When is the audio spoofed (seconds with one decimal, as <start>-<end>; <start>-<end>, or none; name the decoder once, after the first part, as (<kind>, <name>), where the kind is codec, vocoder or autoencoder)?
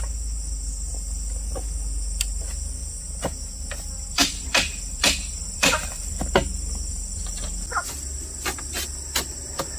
2.8-7.9 (vocoder, BigVGAN v2)